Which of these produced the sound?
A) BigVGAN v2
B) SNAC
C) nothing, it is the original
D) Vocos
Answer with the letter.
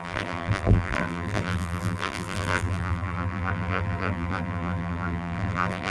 A